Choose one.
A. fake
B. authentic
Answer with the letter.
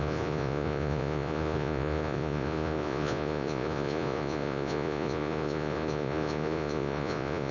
A